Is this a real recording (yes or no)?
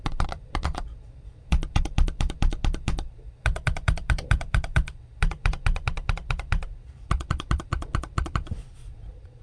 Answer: no